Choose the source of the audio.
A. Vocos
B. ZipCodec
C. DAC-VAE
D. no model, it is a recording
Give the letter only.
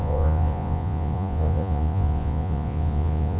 A